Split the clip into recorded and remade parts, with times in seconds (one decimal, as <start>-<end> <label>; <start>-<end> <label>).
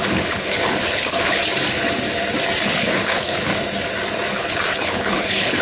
0.0-1.4 remade; 1.4-2.7 recorded; 2.7-3.5 remade; 3.5-4.3 recorded; 4.3-5.6 remade